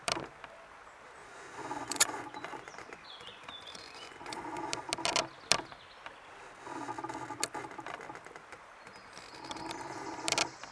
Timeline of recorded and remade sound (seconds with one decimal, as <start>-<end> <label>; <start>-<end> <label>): 0.0-1.2 recorded; 1.2-4.7 remade; 4.7-10.7 recorded